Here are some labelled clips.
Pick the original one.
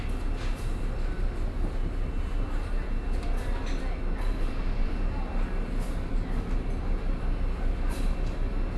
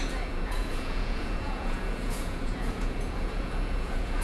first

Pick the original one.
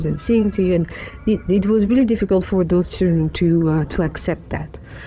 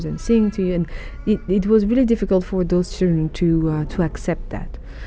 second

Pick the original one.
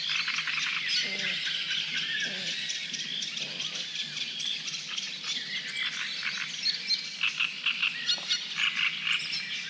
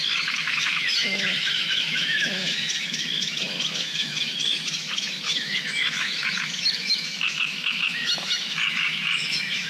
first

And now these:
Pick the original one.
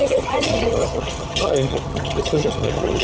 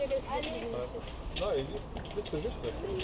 second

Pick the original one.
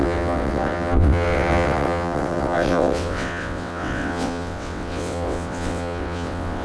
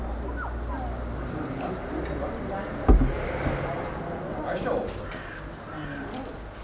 second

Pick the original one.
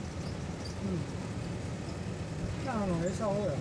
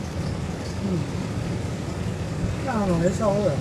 first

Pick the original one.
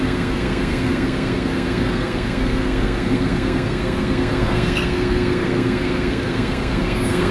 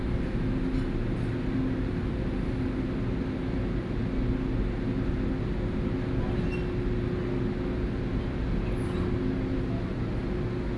second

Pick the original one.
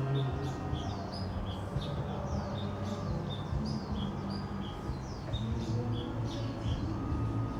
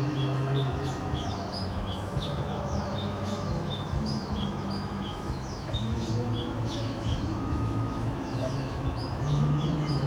first